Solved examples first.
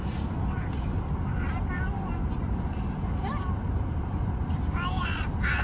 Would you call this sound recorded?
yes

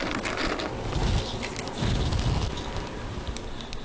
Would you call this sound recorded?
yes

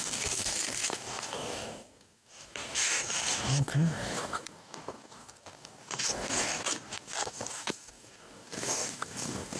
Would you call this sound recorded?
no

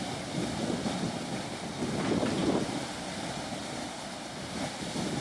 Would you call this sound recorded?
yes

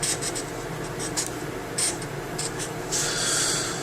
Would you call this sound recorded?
no